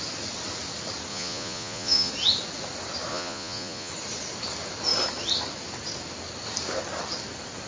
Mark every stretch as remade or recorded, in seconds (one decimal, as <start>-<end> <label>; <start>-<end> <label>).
0.0-1.1 recorded; 1.1-2.1 remade; 2.1-3.1 recorded; 3.1-3.9 remade; 3.9-7.7 recorded